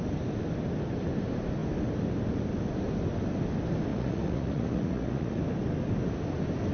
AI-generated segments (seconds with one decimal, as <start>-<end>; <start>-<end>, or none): 3.9-5.4